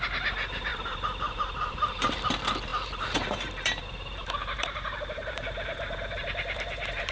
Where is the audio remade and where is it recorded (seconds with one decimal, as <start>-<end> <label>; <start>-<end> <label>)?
0.0-0.7 recorded; 0.7-2.1 remade; 2.1-2.7 recorded; 2.7-7.1 remade